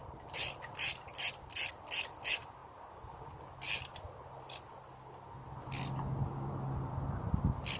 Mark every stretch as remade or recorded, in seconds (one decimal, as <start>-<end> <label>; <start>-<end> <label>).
0.0-0.7 remade; 0.7-7.8 recorded